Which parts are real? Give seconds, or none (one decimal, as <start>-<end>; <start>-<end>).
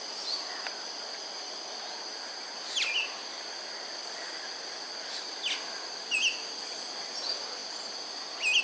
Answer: 0.0-8.6